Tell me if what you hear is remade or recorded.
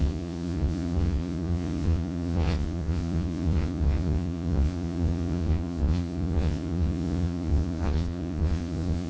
remade